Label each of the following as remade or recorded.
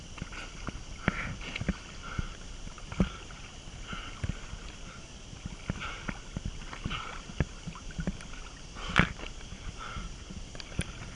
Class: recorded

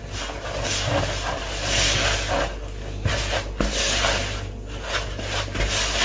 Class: recorded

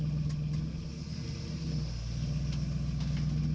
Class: recorded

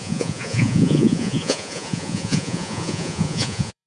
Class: remade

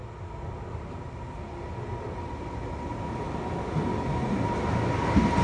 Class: recorded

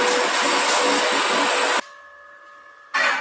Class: recorded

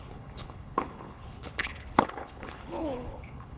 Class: remade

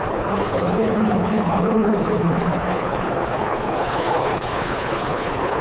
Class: remade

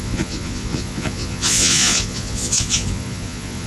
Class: remade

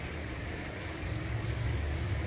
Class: remade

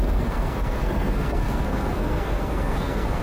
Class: remade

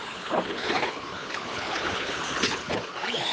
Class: remade